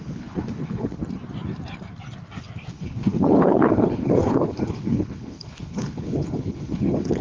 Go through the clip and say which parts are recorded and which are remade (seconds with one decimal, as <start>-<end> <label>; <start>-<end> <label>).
0.0-1.0 remade; 1.0-2.7 recorded; 2.7-7.2 remade